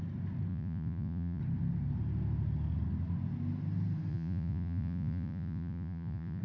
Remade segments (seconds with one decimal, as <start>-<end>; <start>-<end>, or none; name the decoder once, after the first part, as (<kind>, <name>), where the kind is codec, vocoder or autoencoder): 0.5-1.4 (vocoder, Vocos); 4.1-6.4